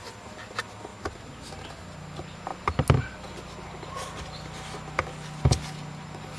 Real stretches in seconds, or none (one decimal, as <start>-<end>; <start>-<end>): 0.0-6.4